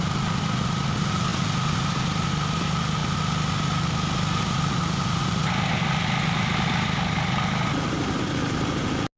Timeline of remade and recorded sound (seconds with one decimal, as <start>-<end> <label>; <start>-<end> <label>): 0.0-9.2 recorded